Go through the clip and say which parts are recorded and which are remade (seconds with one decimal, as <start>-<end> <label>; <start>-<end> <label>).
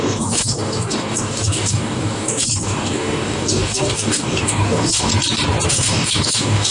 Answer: 0.0-5.1 remade; 5.1-5.7 recorded; 5.7-6.7 remade